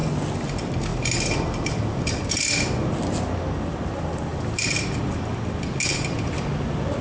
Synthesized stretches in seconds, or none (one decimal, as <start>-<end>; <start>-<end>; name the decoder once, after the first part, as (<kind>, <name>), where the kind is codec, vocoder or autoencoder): none